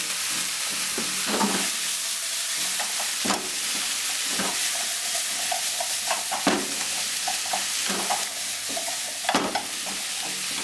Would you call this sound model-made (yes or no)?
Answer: no